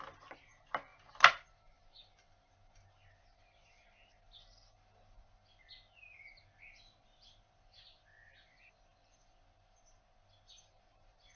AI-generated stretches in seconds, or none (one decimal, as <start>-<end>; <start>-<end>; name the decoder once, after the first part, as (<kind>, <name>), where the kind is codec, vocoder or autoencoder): none